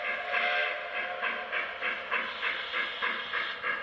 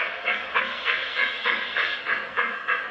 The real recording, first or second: first